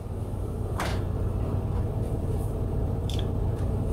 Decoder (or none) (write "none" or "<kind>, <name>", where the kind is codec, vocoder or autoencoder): vocoder, BigVGAN v2